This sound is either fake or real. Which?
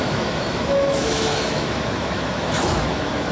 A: fake